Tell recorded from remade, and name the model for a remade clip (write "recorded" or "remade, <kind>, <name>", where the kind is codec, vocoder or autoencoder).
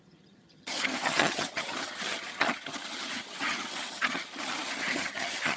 remade, vocoder, HiFi-GAN